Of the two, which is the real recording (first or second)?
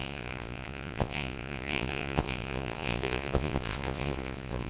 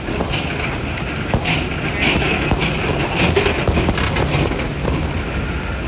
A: second